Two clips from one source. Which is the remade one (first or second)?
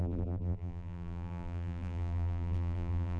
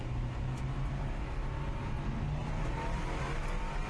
first